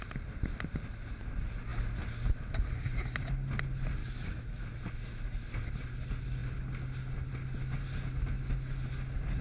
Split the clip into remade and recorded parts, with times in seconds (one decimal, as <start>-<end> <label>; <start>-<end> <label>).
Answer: 0.0-4.0 recorded; 4.0-4.8 remade; 4.8-9.4 recorded